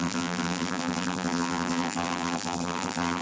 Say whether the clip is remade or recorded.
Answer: remade